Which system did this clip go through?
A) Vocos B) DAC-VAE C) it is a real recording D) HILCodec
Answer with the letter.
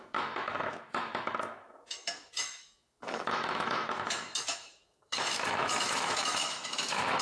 B